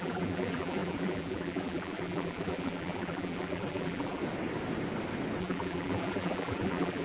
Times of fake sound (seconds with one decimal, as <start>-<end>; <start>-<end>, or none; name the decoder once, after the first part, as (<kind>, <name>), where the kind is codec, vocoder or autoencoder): 0.0-4.2 (vocoder, BigVGAN v2); 5.4-7.0

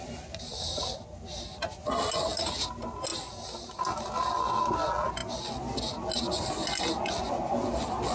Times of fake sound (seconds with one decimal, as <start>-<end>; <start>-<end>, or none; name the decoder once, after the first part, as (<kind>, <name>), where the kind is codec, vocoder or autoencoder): none

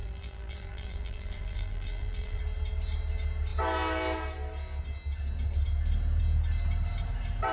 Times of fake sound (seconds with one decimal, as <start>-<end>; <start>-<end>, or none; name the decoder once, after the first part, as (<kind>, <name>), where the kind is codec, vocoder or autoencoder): 0.0-2.4 (vocoder, BigVGAN v2)

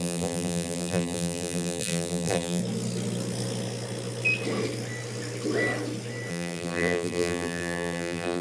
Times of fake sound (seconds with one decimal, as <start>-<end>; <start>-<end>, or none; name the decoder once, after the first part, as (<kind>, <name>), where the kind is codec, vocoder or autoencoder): 0.0-2.6 (vocoder, BigVGAN v2); 6.3-8.4